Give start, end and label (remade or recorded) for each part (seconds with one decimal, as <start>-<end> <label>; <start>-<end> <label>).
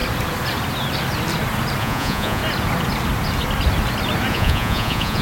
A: 0.0-1.8 recorded; 1.8-2.4 remade; 2.4-4.3 recorded; 4.3-5.2 remade